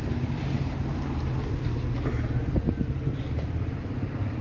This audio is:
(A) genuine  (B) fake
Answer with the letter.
A